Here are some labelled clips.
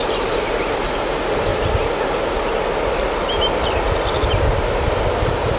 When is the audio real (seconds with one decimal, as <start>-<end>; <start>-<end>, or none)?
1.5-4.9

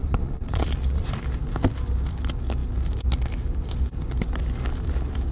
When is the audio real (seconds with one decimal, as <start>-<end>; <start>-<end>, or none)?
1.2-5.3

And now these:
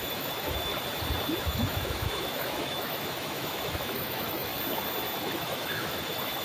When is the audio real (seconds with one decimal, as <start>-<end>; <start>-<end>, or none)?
0.7-1.4; 4.5-5.2

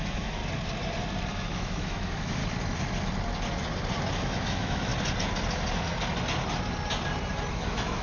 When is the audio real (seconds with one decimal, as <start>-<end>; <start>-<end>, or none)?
0.4-1.3; 2.4-4.1; 4.9-7.5

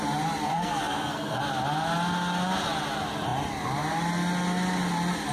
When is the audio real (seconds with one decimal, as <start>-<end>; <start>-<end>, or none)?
0.0-0.5; 1.4-5.3

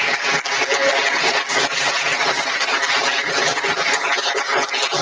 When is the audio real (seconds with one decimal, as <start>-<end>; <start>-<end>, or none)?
0.0-2.1; 2.8-5.0

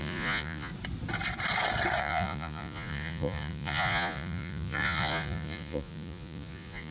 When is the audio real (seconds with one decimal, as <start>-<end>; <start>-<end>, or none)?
0.7-2.0

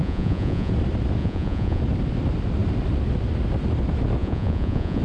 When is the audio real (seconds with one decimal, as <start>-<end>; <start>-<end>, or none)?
0.7-1.2; 1.8-4.2